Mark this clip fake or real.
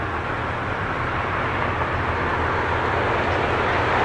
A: real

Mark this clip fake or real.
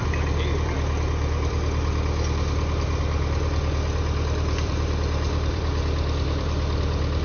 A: fake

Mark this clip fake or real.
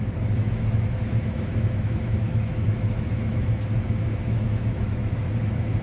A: fake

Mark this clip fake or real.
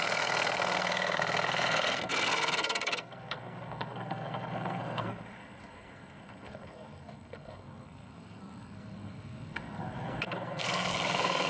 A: fake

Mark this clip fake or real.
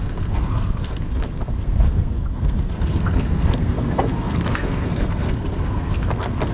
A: fake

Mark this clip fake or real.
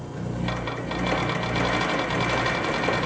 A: real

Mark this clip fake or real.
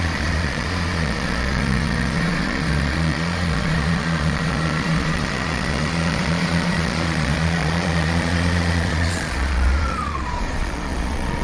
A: fake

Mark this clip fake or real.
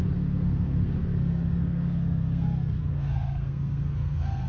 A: fake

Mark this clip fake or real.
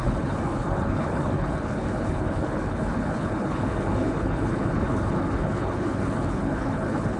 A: fake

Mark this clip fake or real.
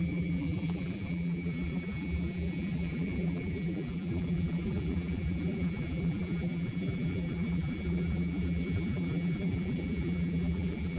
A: fake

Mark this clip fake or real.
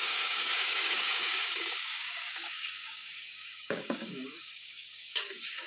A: fake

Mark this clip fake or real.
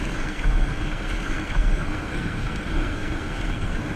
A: fake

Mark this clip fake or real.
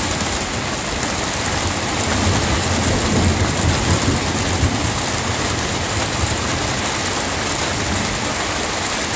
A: real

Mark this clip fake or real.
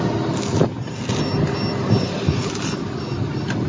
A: real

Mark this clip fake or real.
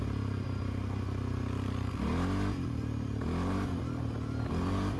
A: real